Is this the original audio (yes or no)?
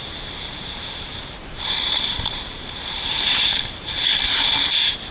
no